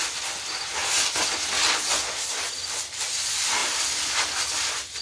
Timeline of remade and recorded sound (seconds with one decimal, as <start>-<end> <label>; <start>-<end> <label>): 0.0-5.0 recorded